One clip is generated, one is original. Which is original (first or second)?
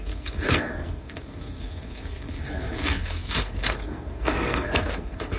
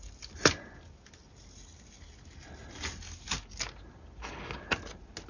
second